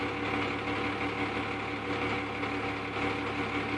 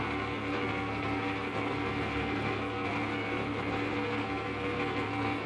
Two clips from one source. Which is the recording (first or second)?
first